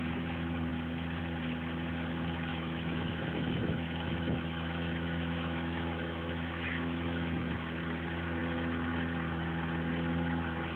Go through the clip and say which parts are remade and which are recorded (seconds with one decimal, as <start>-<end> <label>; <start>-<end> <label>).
0.0-2.5 recorded; 2.5-7.5 remade; 7.5-10.8 recorded